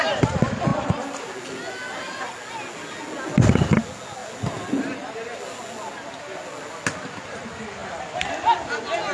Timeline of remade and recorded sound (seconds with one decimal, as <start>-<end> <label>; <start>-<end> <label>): 0.0-9.1 recorded